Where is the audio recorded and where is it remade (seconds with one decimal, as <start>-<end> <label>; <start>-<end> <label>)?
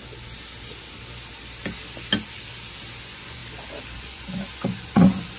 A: 0.0-3.0 recorded; 3.0-3.4 remade; 3.4-4.0 recorded; 4.0-5.4 remade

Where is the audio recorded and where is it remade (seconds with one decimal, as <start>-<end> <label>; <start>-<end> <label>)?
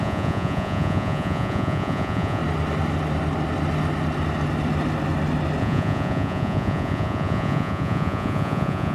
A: 0.0-2.4 remade; 2.4-5.6 recorded; 5.6-8.9 remade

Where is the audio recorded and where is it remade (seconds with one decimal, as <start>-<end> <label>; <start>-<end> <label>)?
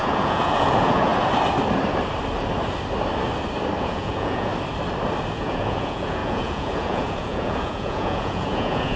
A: 0.0-1.1 remade; 1.1-3.8 recorded; 3.8-4.5 remade; 4.5-5.3 recorded; 5.3-9.0 remade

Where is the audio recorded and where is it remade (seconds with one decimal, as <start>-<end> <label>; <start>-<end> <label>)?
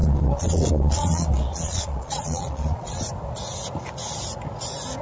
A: 0.0-3.0 remade; 3.0-5.0 recorded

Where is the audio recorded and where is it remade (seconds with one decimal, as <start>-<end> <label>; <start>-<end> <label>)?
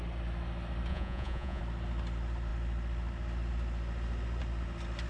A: 0.0-0.9 recorded; 0.9-1.6 remade; 1.6-5.1 recorded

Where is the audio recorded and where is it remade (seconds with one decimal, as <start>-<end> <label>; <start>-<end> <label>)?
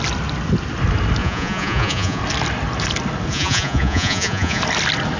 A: 0.0-1.2 recorded; 1.2-2.2 remade; 2.2-3.3 recorded; 3.3-4.6 remade; 4.6-5.2 recorded